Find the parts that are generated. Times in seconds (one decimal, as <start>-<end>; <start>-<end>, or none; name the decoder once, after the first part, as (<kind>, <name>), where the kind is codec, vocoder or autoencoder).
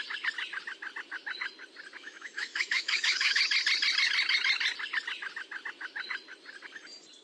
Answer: 2.0-3.4 (autoencoder, DAC-VAE)